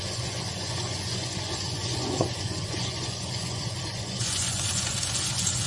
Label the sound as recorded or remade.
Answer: remade